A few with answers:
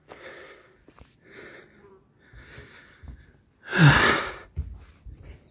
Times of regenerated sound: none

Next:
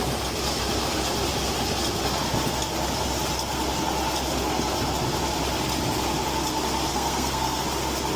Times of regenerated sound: 6.9-7.6 (codec, SNAC)

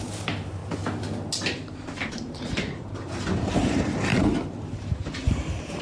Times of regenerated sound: 0.0-0.6 (vocoder, BigVGAN v2); 2.1-5.8

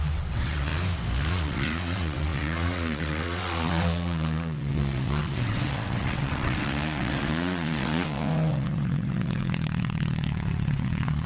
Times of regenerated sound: 0.0-0.7 (vocoder, WaveNeXt); 1.3-11.3

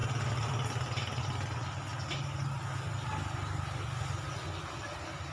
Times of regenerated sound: none

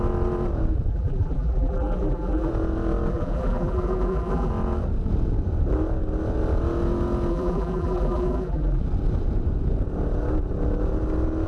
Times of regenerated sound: 0.9-2.5 (vocoder, BigVGAN v2); 3.1-4.5; 7.3-8.8

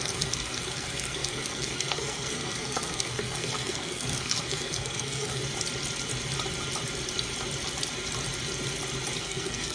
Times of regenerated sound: 0.0-5.4 (codec, SNAC); 9.2-9.7